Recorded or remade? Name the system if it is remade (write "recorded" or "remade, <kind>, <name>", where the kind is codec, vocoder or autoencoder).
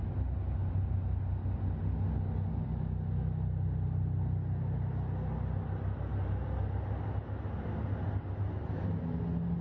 recorded